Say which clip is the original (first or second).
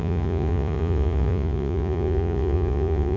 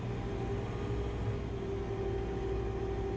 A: second